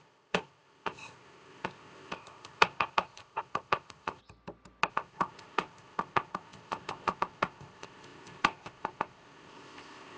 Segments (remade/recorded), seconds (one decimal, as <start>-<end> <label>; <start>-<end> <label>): 0.0-4.2 remade; 4.2-4.9 recorded; 4.9-10.2 remade